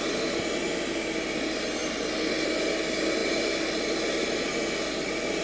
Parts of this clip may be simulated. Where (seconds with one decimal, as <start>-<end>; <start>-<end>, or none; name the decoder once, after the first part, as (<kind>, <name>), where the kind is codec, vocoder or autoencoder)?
none